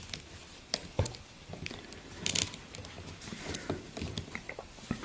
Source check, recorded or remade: recorded